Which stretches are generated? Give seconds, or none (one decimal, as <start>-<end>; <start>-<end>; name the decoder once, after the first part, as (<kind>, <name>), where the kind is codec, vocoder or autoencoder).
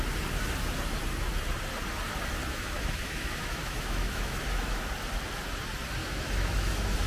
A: 2.4-4.8 (autoencoder, DAC-VAE); 6.0-7.1